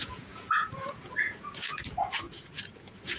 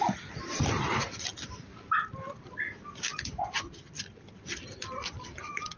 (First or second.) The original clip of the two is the second